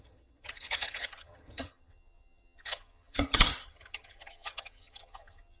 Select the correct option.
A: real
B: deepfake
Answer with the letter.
B